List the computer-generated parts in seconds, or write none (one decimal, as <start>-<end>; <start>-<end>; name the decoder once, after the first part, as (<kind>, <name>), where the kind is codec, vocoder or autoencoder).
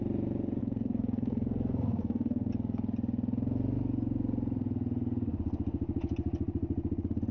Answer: 0.6-2.5 (codec, SNAC)